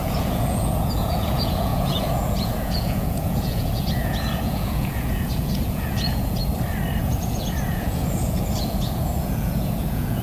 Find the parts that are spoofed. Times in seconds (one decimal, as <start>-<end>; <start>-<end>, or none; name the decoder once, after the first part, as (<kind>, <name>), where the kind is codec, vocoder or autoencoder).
0.0-6.4 (vocoder, Vocos); 7.0-10.2